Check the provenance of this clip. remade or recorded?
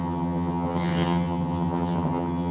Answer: remade